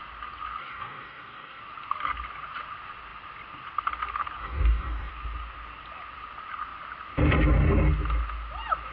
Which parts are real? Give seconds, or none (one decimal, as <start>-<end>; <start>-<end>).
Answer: 0.0-0.6; 1.6-4.4; 5.1-8.9